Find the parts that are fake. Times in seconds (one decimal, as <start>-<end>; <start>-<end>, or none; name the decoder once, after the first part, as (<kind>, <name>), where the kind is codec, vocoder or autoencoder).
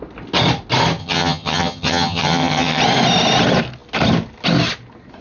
1.0-2.8 (vocoder, HiFi-GAN)